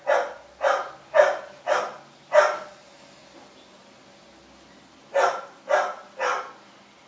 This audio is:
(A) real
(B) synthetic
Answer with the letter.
A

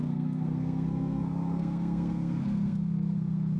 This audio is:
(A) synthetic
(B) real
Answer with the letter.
A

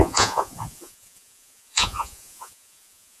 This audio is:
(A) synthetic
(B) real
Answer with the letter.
A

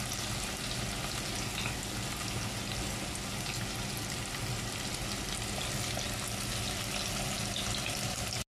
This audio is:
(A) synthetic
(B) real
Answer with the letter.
B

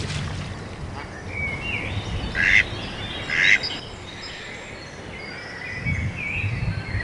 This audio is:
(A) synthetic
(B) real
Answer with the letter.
B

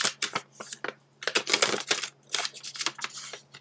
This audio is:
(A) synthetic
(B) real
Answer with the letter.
B